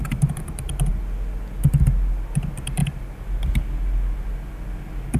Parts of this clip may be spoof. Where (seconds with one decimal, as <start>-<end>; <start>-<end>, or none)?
none